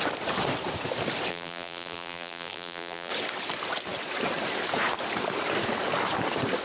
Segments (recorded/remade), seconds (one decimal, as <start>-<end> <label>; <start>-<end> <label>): 0.0-1.3 recorded; 1.3-3.1 remade; 3.1-6.6 recorded